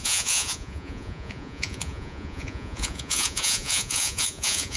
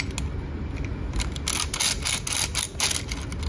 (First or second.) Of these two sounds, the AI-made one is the first